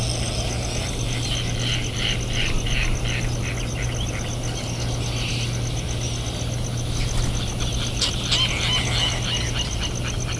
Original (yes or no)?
yes